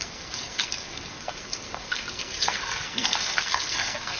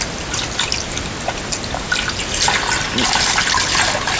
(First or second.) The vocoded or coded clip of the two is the first